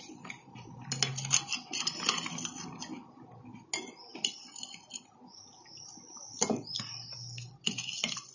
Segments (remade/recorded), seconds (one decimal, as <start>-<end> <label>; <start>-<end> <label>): 0.0-8.3 recorded